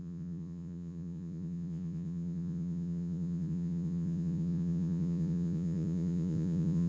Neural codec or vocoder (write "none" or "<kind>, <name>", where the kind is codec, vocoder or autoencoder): vocoder, Vocos